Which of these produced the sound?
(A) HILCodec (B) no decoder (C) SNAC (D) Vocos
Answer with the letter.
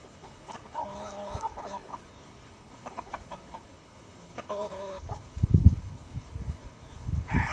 A